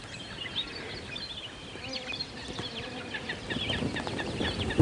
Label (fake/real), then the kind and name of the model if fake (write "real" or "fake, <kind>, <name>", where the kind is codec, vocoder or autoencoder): real